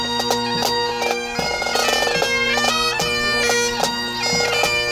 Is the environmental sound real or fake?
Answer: real